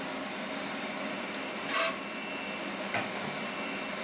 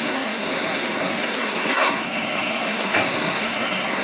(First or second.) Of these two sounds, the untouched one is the first